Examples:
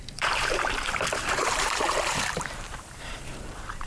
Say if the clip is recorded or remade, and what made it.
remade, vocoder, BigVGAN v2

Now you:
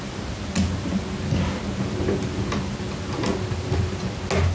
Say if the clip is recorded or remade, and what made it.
recorded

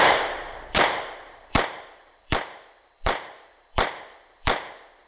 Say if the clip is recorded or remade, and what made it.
remade, vocoder, BigVGAN v2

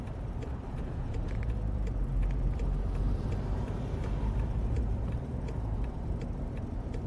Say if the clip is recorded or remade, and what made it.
remade, vocoder, BigVGAN v2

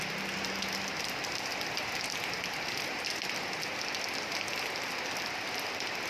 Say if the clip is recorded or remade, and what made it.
recorded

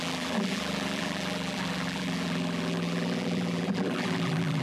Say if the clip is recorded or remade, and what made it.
remade, vocoder, BigVGAN v2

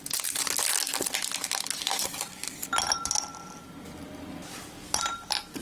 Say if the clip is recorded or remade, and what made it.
recorded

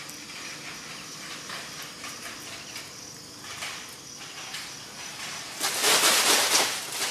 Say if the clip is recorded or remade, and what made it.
recorded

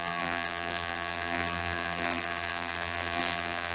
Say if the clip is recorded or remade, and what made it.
remade, vocoder, BigVGAN v2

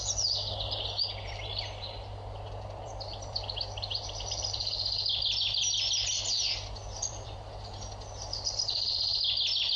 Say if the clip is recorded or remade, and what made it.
remade, vocoder, BigVGAN v2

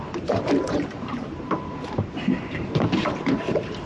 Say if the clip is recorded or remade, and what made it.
remade, vocoder, BigVGAN v2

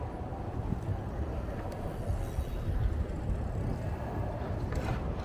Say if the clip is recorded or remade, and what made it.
recorded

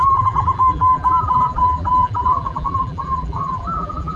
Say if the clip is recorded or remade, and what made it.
remade, vocoder, BigVGAN v2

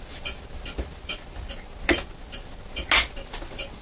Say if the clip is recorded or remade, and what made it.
recorded